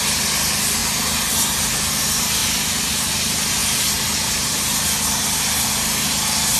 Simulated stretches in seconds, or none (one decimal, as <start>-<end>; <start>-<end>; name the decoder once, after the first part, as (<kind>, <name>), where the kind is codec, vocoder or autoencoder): none